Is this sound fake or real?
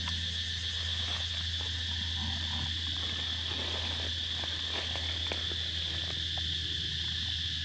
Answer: real